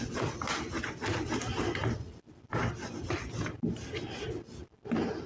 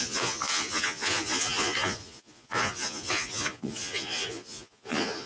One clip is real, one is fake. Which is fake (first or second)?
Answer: second